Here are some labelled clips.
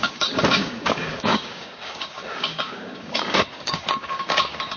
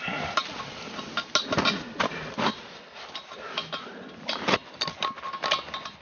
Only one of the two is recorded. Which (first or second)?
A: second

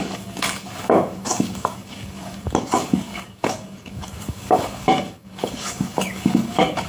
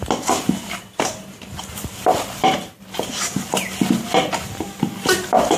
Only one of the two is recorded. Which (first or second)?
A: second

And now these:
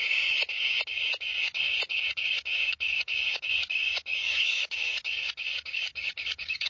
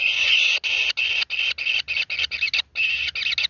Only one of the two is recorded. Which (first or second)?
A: second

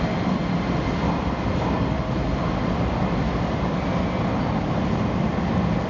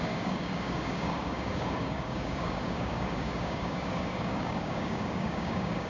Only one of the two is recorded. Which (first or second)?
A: first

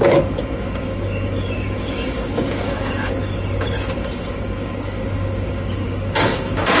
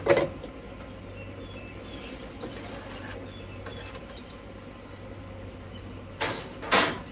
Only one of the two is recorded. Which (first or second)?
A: second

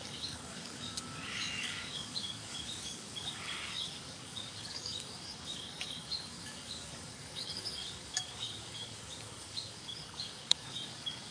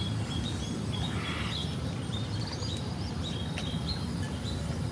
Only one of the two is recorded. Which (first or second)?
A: second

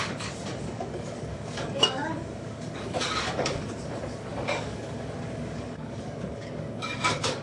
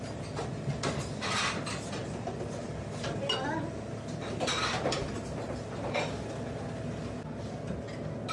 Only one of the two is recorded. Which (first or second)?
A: second